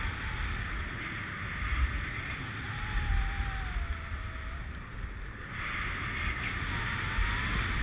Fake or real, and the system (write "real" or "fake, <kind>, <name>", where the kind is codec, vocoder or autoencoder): real